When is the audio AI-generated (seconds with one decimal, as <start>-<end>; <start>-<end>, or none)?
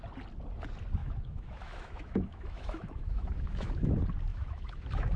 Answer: 1.0-3.9; 4.3-5.2